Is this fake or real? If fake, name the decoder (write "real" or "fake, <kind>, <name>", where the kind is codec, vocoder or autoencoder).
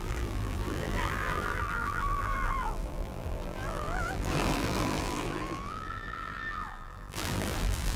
fake, vocoder, BigVGAN v2